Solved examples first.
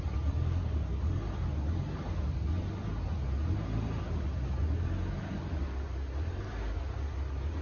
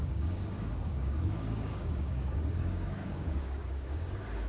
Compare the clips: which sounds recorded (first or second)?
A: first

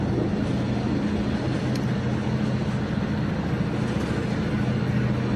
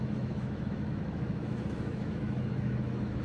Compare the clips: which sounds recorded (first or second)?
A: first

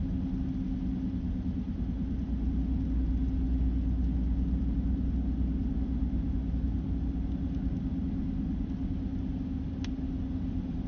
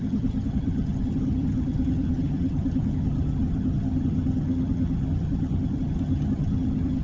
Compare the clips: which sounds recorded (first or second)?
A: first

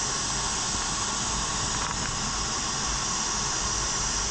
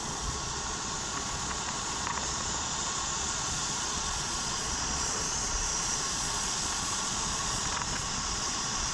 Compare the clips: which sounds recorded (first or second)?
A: first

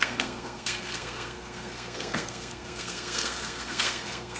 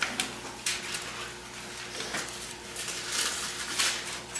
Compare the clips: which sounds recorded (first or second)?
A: second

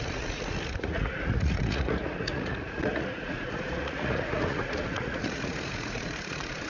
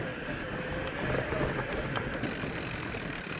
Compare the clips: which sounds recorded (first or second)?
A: second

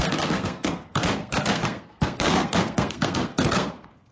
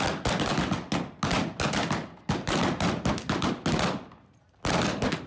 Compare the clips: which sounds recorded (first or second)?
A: second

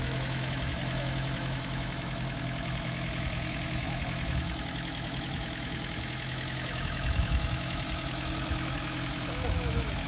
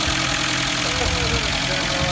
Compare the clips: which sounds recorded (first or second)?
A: second